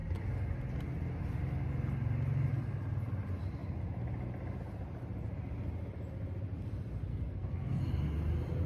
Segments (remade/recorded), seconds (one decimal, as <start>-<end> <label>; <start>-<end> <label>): 0.0-7.1 recorded; 7.1-7.8 remade; 7.8-8.7 recorded